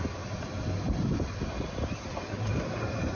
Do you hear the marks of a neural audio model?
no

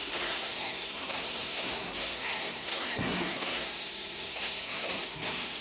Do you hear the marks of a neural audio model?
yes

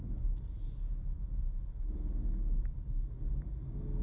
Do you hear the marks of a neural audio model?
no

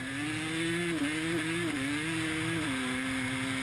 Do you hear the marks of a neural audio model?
no